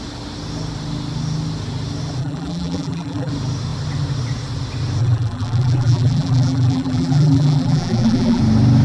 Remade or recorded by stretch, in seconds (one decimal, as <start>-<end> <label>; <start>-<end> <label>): 0.0-2.2 recorded; 2.2-3.3 remade; 3.3-5.0 recorded; 5.0-8.4 remade; 8.4-8.8 recorded